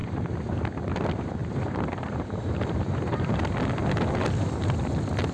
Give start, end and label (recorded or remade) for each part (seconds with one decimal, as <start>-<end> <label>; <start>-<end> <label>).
0.0-0.6 remade; 0.6-1.4 recorded; 1.4-3.5 remade; 3.5-5.3 recorded